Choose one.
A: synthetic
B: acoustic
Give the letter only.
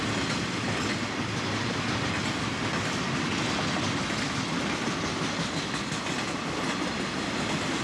B